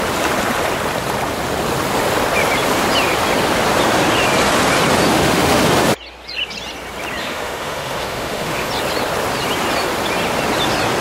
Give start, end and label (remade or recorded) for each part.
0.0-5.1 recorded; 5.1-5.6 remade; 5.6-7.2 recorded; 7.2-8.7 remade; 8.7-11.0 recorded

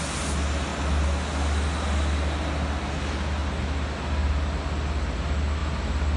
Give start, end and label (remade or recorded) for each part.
0.0-6.2 recorded

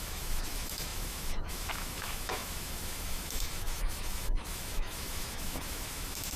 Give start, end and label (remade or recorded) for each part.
0.0-6.4 remade

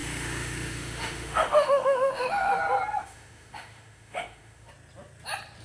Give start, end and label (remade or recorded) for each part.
0.0-2.6 remade; 2.6-3.0 recorded; 3.0-4.7 remade; 4.7-5.6 recorded

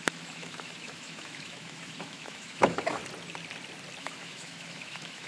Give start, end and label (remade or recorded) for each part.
0.0-3.0 remade; 3.0-4.0 recorded; 4.0-5.3 remade